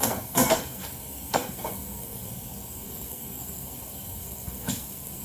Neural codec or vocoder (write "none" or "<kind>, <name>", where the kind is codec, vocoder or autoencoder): codec, SNAC